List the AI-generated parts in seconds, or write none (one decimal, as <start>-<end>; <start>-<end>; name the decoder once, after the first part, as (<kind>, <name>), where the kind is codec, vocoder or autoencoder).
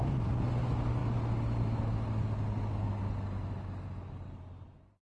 none